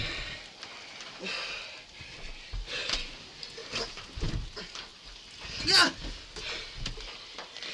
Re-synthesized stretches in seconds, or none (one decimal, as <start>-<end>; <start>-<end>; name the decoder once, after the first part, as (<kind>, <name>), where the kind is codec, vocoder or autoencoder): none